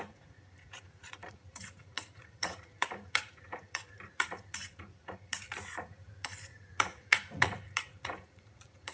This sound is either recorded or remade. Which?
remade